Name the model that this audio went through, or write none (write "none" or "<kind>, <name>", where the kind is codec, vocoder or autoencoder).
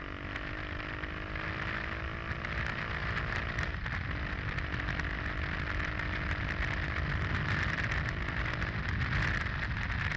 none